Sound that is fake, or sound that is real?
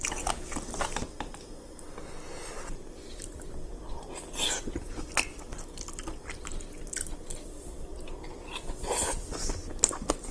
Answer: real